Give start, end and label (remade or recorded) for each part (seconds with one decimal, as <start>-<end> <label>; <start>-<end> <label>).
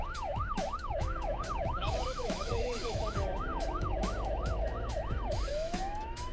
0.0-6.3 remade